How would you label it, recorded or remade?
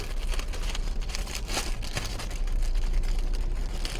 recorded